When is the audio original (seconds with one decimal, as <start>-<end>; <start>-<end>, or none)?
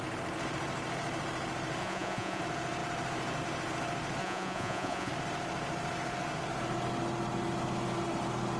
0.0-1.8; 2.4-4.2; 5.1-8.6